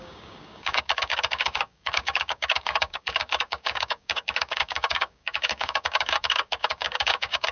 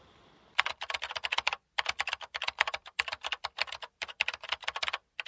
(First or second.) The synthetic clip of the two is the first